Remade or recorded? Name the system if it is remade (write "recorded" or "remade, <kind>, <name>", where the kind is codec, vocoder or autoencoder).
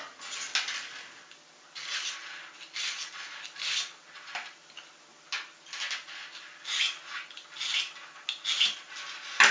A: recorded